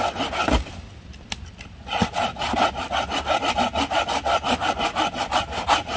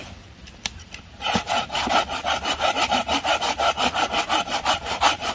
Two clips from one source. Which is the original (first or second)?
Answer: first